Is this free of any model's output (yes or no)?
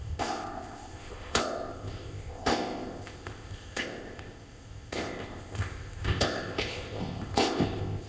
no